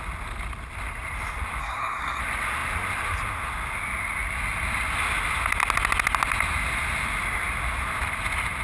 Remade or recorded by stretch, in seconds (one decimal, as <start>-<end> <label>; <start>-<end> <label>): 0.0-1.6 recorded; 1.6-2.2 remade; 2.2-8.6 recorded